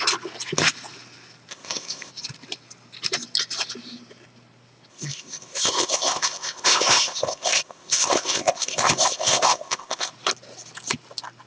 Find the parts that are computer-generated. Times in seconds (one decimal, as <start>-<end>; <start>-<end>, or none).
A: 1.5-2.1; 4.9-10.1